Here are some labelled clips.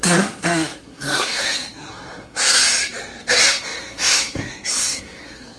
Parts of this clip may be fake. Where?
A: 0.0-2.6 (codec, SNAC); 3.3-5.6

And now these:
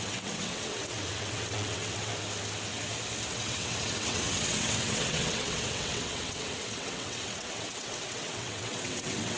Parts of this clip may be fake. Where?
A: 0.0-2.1 (vocoder, WaveNeXt); 3.3-9.4

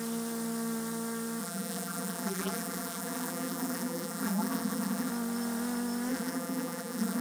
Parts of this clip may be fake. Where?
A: 1.4-5.1 (vocoder, BigVGAN v2); 6.1-7.2

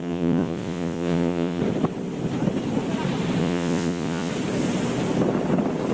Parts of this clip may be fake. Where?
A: 0.0-1.6 (vocoder, Vocos); 3.4-4.3

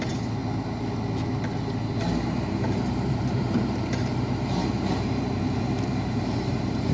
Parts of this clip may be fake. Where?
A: 0.0-0.4 (vocoder, BigVGAN v2); 2.9-6.9